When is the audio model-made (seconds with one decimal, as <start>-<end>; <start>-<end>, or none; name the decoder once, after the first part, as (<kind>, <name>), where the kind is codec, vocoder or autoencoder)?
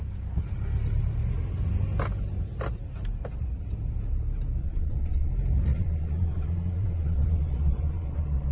4.6-5.3 (vocoder, Vocos); 5.7-8.5